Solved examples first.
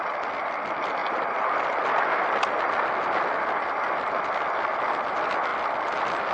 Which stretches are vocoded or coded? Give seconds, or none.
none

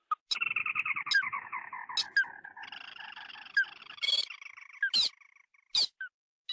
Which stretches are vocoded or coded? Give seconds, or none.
none

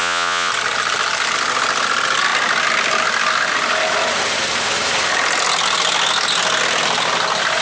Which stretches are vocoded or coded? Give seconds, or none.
0.0-0.5 (vocoder, Vocos)

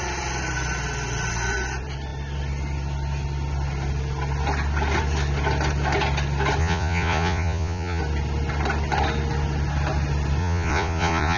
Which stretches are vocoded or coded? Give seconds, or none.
6.6-8.0 (vocoder, Vocos); 10.4-11.4

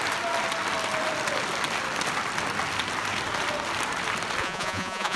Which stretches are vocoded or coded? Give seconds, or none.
4.4-5.2 (vocoder, Vocos)

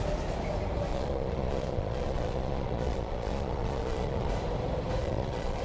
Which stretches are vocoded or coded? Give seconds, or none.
0.9-4.3 (vocoder, Vocos); 5.0-5.6